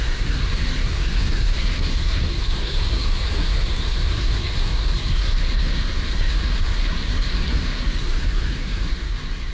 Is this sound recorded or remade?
remade